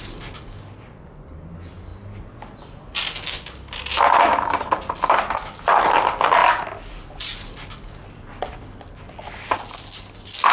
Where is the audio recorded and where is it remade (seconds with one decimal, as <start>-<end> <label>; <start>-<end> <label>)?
0.0-10.5 recorded